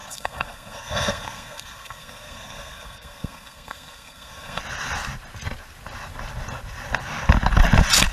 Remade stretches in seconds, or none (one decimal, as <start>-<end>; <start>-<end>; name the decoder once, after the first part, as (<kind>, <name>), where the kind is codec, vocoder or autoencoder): 0.0-4.6 (codec, SNAC)